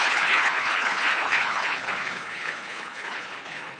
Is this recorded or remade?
remade